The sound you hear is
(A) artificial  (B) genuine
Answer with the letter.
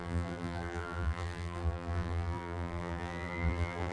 A